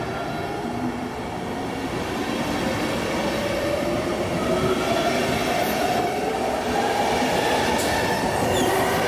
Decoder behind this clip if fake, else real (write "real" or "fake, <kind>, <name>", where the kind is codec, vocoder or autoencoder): real